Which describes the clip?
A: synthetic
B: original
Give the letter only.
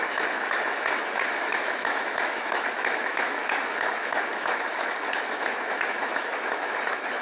A